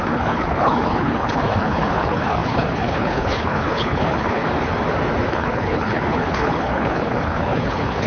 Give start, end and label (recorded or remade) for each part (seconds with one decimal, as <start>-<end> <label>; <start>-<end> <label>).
0.0-4.4 remade; 4.4-5.3 recorded; 5.3-8.1 remade